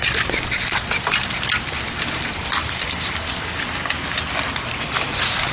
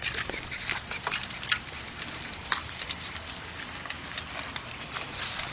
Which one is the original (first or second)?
first